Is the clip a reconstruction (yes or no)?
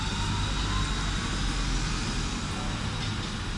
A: no